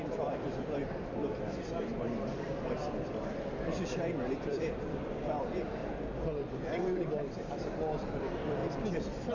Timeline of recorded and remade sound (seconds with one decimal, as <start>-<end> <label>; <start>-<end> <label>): 0.0-0.8 remade; 0.8-4.5 recorded; 4.5-5.8 remade; 5.8-7.2 recorded; 7.2-8.6 remade; 8.6-9.3 recorded